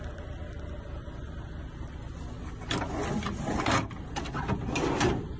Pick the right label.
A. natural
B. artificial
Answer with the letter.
A